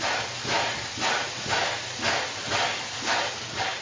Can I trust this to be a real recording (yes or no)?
yes